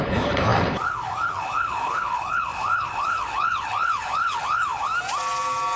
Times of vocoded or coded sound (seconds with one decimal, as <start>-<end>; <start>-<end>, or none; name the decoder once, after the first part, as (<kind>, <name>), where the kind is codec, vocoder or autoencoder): 0.0-4.9 (codec, HILCodec)